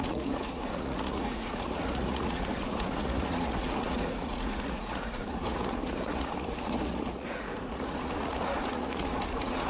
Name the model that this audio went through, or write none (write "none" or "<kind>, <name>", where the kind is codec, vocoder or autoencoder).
vocoder, Vocos